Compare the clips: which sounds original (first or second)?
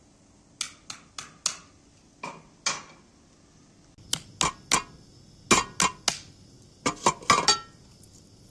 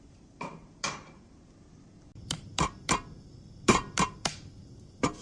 first